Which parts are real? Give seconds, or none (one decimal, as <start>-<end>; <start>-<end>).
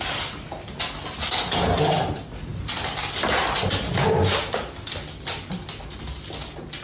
0.0-6.8